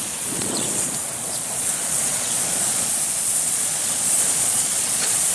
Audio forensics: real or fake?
fake